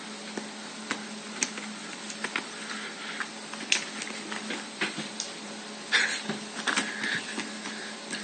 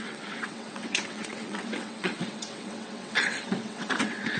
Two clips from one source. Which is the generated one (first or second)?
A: second